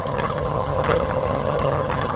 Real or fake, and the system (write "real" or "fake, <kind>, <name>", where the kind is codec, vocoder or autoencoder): fake, vocoder, HiFi-GAN